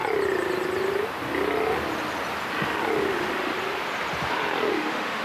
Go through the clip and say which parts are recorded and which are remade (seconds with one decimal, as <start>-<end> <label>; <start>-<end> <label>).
0.0-3.1 recorded; 3.1-3.5 remade; 3.5-4.7 recorded; 4.7-5.2 remade